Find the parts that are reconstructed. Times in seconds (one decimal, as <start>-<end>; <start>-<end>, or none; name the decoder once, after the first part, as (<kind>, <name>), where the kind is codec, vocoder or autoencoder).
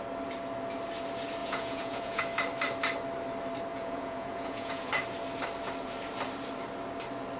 1.4-2.2 (vocoder, Vocos); 3.7-4.9